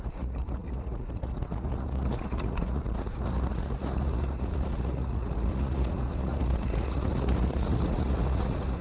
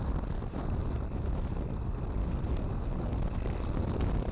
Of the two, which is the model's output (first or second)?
first